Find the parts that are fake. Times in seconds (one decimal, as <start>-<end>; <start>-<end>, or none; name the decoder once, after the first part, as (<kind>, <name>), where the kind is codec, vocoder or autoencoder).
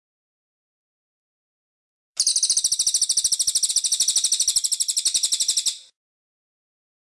none